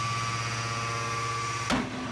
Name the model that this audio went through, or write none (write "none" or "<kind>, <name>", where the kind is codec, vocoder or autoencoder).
none